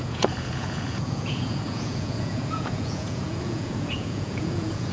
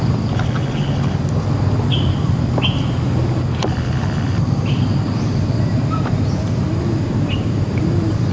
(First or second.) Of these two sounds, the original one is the second